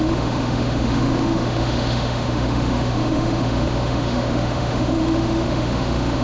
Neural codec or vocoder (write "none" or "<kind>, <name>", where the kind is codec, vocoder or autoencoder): autoencoder, DAC-VAE